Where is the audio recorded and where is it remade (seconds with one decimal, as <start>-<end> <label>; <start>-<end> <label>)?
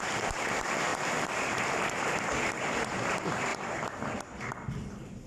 0.0-5.3 recorded